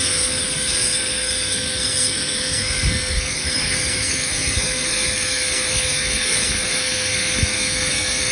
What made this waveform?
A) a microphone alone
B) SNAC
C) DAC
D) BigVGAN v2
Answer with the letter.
B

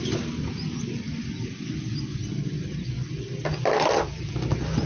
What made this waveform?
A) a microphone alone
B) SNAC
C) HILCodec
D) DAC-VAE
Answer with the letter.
A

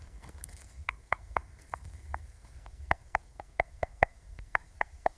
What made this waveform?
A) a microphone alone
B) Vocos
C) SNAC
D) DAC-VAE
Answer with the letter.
C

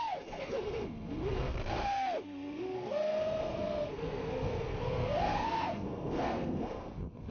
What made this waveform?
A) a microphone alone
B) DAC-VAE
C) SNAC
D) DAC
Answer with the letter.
C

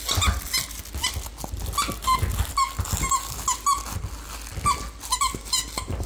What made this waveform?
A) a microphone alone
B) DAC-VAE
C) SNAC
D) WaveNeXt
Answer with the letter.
A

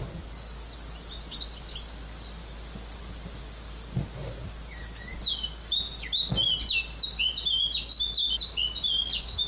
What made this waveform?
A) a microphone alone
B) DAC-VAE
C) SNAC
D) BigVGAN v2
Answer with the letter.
A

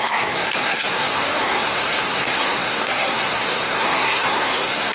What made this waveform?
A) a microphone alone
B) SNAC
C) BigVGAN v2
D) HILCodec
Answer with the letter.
B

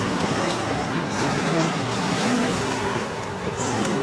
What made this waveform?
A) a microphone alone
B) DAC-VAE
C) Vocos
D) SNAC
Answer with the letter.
D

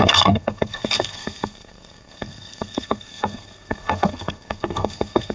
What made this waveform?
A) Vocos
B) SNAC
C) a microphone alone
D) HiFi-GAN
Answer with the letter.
B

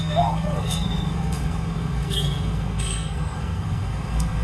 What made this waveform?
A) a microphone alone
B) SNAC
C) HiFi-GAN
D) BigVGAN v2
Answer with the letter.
B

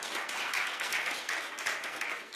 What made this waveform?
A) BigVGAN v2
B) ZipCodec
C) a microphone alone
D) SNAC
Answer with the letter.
D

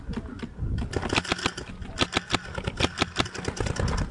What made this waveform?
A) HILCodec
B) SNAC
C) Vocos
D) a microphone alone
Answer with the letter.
D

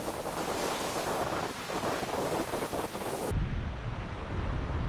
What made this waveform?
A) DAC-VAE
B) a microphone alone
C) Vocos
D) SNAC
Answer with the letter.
B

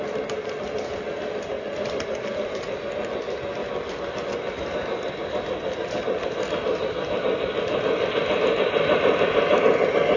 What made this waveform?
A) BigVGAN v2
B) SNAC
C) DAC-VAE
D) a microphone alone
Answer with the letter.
D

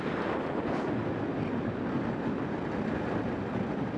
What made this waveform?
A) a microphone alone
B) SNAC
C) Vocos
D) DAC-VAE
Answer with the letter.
A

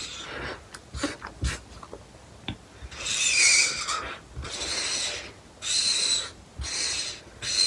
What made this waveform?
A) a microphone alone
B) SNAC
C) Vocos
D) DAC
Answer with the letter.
A